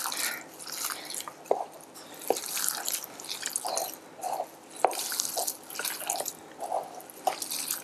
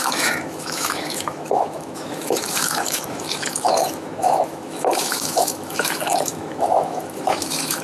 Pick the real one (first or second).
first